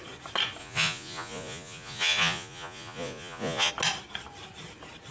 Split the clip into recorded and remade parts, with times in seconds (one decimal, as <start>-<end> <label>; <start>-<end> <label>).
0.0-0.6 recorded; 0.6-3.7 remade; 3.7-5.1 recorded